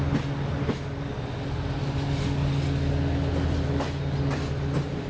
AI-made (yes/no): no